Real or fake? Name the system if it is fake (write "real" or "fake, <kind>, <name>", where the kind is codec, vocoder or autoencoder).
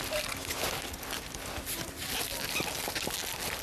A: real